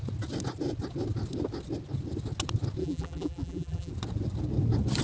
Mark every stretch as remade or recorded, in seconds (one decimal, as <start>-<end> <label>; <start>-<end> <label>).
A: 0.0-2.8 recorded; 2.8-3.9 remade; 3.9-5.0 recorded